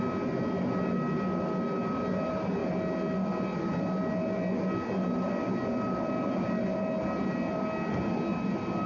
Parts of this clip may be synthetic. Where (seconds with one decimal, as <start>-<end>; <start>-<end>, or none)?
none